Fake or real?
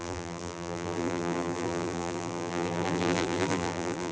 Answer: fake